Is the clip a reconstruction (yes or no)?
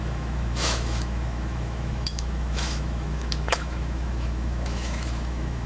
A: yes